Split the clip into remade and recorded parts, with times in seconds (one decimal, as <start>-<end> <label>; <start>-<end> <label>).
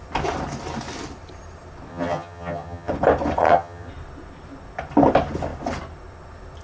0.0-1.9 recorded; 1.9-2.9 remade; 2.9-3.4 recorded; 3.4-3.9 remade; 3.9-6.6 recorded